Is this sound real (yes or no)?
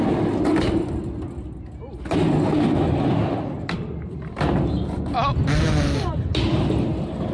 yes